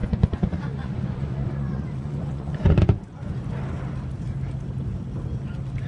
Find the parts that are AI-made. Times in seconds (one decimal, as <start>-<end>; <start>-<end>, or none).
0.0-3.4